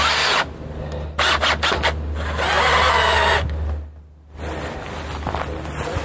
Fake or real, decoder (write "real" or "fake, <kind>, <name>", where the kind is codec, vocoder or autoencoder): real